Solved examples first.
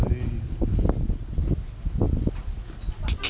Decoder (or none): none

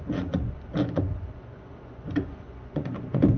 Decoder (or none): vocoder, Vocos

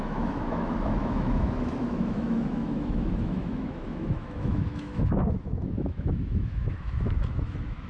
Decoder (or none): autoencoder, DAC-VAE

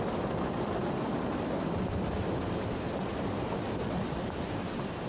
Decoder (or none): none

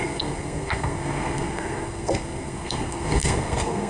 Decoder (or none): codec, SNAC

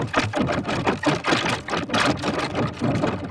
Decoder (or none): none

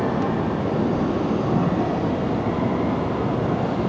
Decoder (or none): none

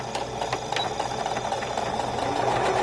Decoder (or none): none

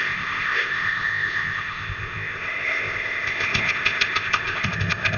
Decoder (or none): codec, ZipCodec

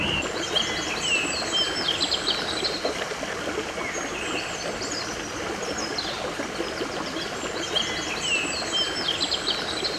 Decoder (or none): none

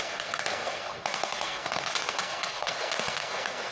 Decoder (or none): codec, SNAC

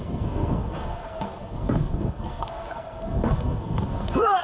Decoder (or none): codec, SNAC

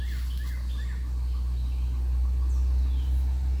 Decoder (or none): none